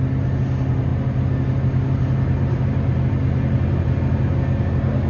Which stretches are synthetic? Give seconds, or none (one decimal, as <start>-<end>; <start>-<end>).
none